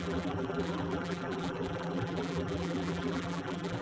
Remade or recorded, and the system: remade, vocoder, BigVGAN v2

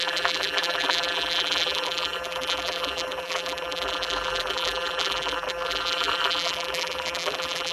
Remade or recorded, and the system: remade, vocoder, BigVGAN v2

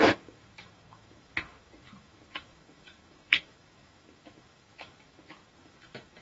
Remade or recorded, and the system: remade, autoencoder, DAC-VAE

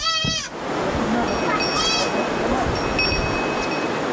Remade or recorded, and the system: recorded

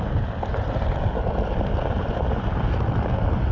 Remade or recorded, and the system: recorded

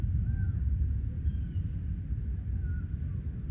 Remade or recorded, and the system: recorded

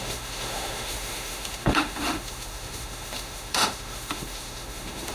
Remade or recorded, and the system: remade, autoencoder, DAC-VAE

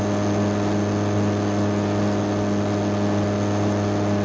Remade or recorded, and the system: recorded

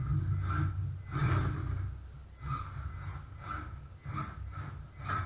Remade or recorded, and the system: recorded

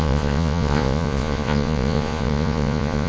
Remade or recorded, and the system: remade, vocoder, Vocos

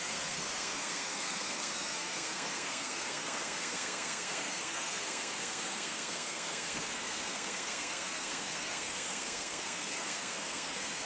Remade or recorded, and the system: remade, codec, SNAC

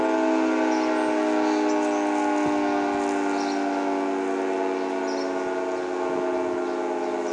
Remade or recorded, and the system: recorded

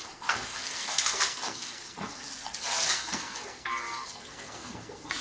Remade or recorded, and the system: remade, codec, SNAC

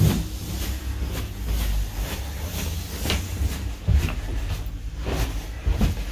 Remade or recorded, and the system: recorded